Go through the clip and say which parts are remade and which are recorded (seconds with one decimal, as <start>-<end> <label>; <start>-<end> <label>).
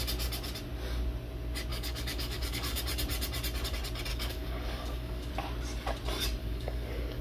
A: 0.0-1.7 recorded; 1.7-2.8 remade; 2.8-4.1 recorded; 4.1-5.3 remade; 5.3-6.4 recorded; 6.4-7.2 remade